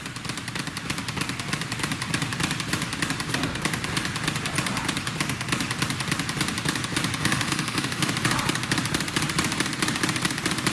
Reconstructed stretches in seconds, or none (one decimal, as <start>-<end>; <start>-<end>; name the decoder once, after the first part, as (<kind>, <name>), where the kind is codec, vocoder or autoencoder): 7.2-8.1 (autoencoder, DAC-VAE)